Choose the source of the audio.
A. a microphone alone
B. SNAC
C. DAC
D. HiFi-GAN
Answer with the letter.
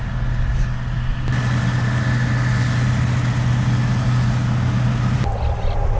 A